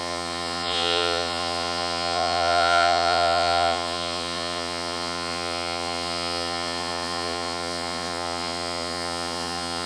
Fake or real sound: fake